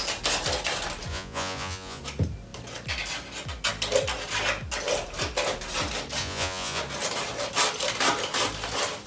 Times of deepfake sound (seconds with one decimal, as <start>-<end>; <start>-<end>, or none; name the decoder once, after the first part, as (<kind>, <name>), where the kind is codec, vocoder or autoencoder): 1.1-2.0 (vocoder, Vocos); 6.2-6.8